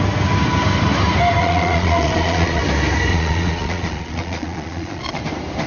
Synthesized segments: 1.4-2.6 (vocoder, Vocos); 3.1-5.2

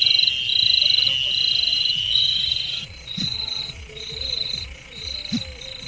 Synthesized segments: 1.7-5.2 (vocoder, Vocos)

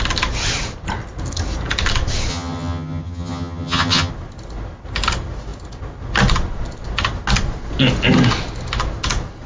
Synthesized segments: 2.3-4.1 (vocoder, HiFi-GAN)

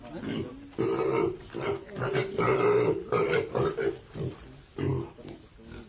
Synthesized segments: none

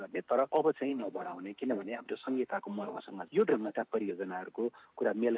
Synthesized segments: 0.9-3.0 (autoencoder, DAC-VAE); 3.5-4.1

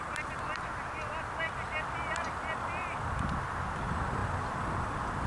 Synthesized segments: none

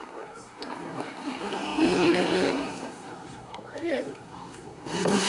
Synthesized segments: 0.0-5.3 (codec, SNAC)